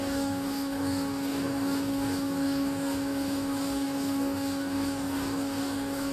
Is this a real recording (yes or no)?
no